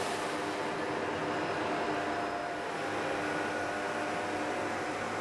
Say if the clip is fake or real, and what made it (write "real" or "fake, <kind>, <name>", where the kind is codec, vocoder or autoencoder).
real